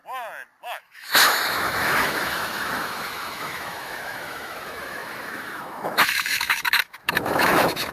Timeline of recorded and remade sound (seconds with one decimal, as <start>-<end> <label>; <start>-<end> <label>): 0.0-0.6 recorded; 0.6-7.9 remade

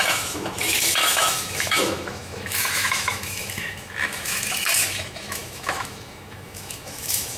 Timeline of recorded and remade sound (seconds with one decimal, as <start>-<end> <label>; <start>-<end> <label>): 0.0-7.4 remade

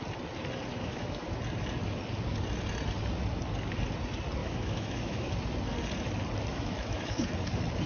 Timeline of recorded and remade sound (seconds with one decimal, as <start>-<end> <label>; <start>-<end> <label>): 0.0-0.7 recorded; 0.7-1.4 remade; 1.4-4.4 recorded; 4.4-5.3 remade; 5.3-6.5 recorded; 6.5-7.3 remade; 7.3-7.9 recorded

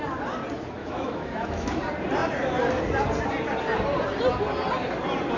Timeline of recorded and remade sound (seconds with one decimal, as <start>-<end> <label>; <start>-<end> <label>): 0.0-0.8 recorded; 0.8-1.8 remade; 1.8-5.4 recorded